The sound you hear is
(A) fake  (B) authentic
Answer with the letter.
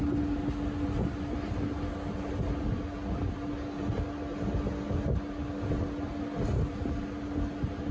B